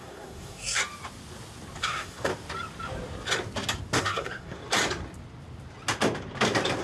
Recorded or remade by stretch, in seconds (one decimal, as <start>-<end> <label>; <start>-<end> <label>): 0.0-0.8 remade; 0.8-1.8 recorded; 1.8-2.3 remade; 2.3-4.0 recorded; 4.0-4.6 remade; 4.6-6.8 recorded